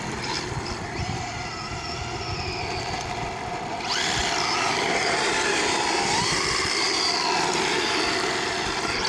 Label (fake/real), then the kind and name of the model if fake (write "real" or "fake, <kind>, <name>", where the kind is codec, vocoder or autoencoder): fake, vocoder, BigVGAN v2